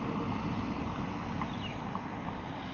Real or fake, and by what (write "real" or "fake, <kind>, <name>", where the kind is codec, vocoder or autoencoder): real